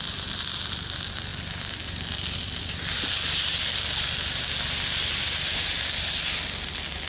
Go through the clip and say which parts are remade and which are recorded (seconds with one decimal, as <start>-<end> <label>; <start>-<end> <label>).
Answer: 0.0-7.1 recorded